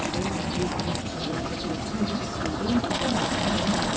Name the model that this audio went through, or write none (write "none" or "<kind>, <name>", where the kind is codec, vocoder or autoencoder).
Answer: none